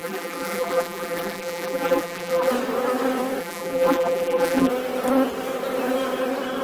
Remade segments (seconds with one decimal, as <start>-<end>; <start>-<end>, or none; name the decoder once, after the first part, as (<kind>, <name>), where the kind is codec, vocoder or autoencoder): 0.0-2.5 (vocoder, BigVGAN v2); 3.4-4.7